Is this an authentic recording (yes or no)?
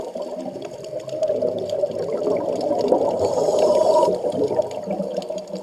yes